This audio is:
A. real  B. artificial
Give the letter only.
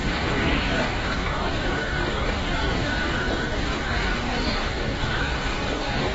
B